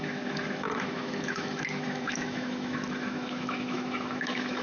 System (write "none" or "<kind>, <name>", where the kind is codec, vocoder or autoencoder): autoencoder, DAC-VAE